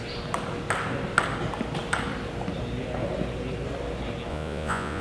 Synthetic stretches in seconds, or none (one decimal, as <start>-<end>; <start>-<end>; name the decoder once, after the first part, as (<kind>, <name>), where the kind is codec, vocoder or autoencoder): 4.3-5.0 (vocoder, Vocos)